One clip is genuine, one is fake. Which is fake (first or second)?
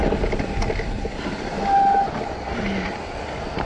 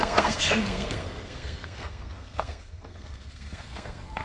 second